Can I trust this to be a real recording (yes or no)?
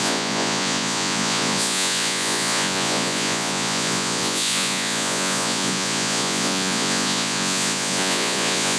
no